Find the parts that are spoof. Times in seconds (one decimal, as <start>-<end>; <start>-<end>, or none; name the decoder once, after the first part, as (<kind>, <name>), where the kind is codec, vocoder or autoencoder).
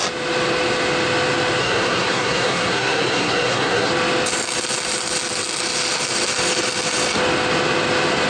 1.6-3.9 (codec, SNAC)